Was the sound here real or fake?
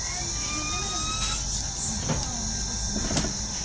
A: real